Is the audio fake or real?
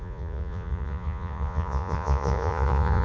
fake